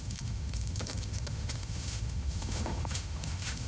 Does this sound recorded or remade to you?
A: remade